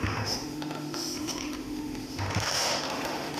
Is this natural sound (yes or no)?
no